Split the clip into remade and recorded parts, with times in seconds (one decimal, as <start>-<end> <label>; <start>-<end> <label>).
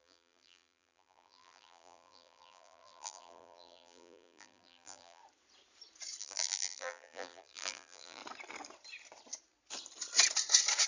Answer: 0.0-5.2 remade; 5.2-6.2 recorded; 6.2-8.2 remade; 8.2-10.9 recorded